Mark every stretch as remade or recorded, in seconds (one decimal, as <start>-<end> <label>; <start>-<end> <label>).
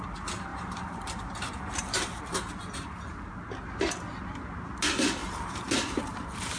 0.0-0.5 recorded; 0.5-2.5 remade; 2.5-5.2 recorded; 5.2-6.0 remade; 6.0-6.6 recorded